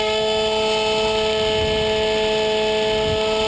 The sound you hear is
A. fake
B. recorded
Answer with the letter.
B